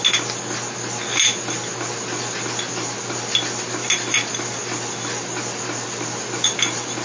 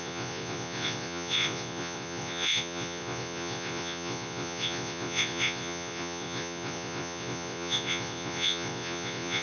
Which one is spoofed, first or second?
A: second